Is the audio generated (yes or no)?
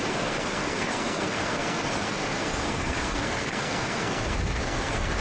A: yes